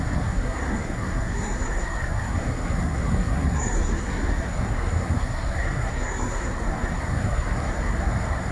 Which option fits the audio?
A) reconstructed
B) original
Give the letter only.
A